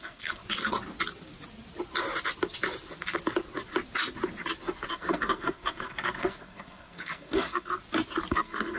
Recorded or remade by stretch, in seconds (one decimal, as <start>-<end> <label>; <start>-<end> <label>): 0.0-0.4 remade; 0.4-4.9 recorded; 4.9-7.8 remade; 7.8-8.3 recorded; 8.3-8.8 remade